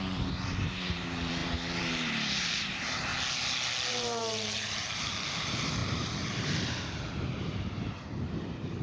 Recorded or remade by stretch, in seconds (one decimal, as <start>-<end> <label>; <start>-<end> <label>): 0.0-3.1 remade; 3.1-3.9 recorded; 3.9-8.8 remade